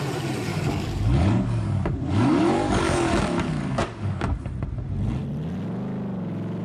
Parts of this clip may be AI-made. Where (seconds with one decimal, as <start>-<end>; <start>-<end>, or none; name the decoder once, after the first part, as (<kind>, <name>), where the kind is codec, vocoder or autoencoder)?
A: 0.5-4.5 (codec, DAC)